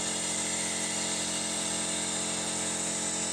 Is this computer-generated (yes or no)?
no